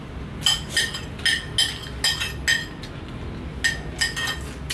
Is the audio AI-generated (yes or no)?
no